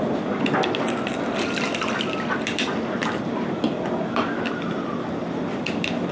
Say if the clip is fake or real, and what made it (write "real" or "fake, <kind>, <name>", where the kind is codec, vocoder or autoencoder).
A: real